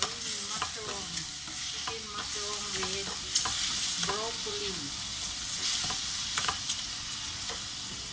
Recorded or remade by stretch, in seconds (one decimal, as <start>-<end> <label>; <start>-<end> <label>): 0.0-8.1 recorded